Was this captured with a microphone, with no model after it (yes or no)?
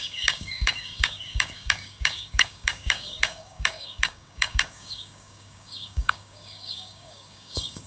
no